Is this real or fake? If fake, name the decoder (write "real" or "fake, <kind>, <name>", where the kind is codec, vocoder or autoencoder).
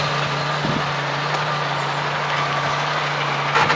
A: real